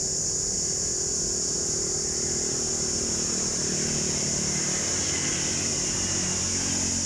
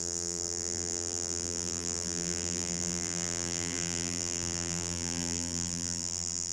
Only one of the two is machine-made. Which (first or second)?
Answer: second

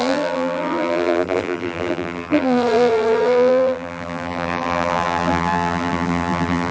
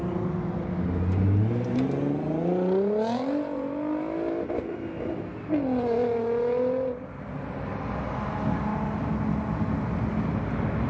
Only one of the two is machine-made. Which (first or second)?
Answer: first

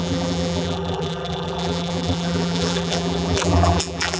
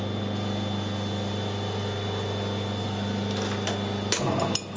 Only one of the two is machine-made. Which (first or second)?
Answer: first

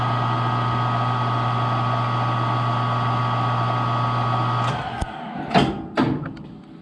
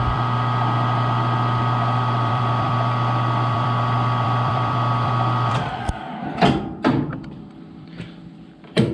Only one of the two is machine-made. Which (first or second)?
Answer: second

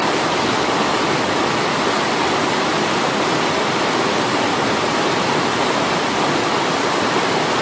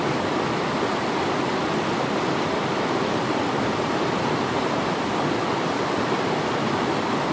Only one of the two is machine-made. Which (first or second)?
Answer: second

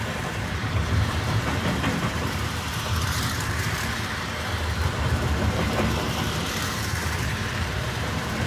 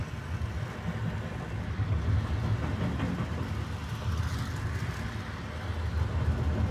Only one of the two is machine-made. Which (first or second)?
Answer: first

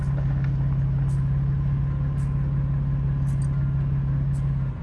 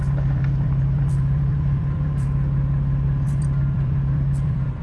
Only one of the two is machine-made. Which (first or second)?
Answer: second